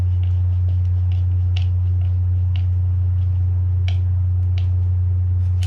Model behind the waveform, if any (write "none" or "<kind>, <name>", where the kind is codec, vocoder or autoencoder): none